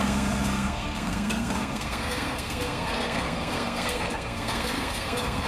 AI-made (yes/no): yes